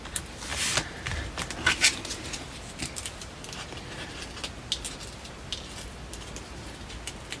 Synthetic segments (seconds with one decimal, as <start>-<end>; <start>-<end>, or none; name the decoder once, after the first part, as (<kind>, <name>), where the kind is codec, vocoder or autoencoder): none